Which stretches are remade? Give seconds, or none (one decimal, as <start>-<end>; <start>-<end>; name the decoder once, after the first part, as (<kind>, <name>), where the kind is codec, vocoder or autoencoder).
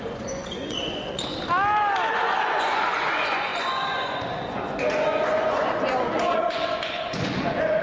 0.0-1.3 (vocoder, Vocos); 2.1-7.8